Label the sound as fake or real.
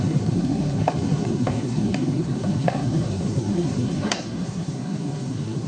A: fake